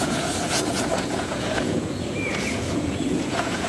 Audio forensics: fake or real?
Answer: fake